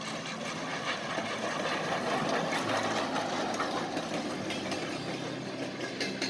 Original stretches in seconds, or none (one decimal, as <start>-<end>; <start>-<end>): 0.0-6.3